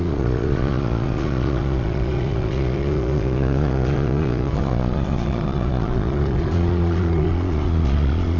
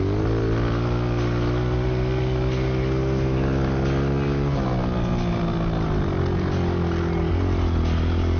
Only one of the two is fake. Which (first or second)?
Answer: first